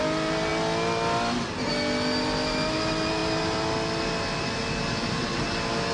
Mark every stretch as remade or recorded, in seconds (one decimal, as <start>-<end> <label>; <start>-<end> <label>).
0.0-5.9 recorded